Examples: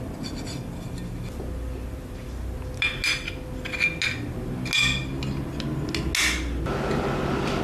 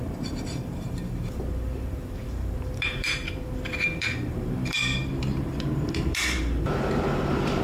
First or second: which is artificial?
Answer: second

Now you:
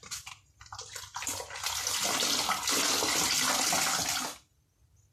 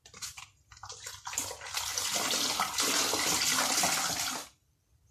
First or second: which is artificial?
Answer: second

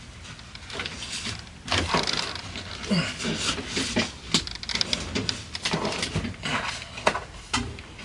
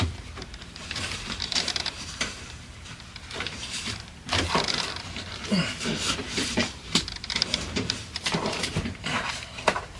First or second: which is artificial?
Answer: second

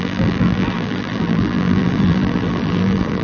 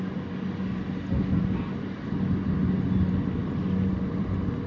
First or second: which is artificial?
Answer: first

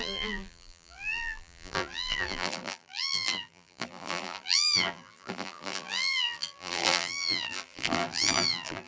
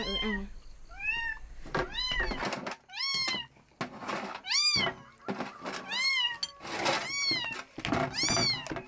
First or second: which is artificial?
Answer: first